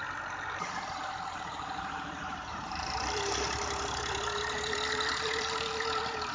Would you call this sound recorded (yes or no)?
no